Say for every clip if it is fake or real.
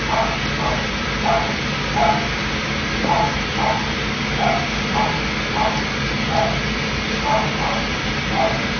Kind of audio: real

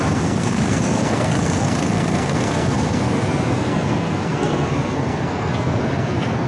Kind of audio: fake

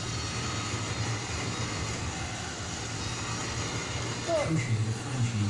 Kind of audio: real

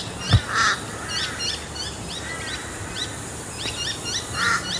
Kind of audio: real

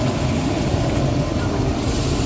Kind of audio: fake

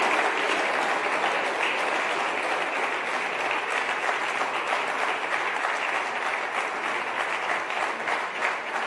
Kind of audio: real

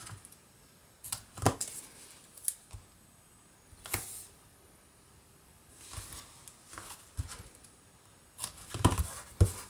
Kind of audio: real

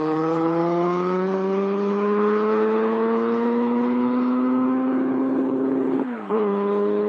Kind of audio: fake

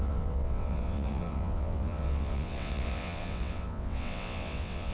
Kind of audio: fake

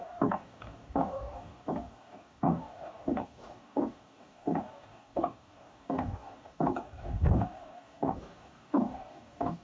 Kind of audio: fake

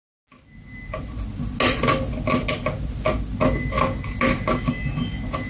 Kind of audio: real